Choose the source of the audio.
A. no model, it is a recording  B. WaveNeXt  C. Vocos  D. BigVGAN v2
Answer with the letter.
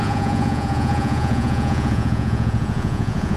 C